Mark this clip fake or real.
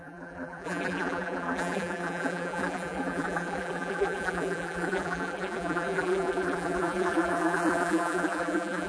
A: fake